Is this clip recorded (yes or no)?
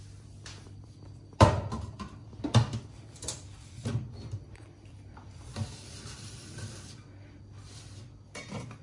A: no